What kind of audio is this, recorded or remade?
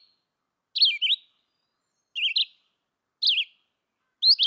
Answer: recorded